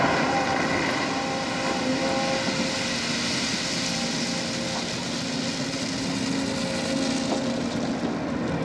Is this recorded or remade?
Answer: recorded